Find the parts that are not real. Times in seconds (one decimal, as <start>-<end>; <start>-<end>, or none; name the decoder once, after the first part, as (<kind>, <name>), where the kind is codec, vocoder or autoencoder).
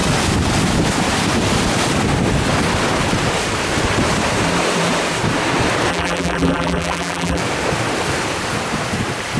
5.9-7.4 (vocoder, BigVGAN v2)